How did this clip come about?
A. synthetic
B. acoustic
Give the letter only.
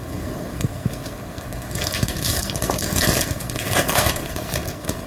A